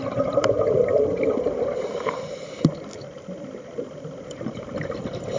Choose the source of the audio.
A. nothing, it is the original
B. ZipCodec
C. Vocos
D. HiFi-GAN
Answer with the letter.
A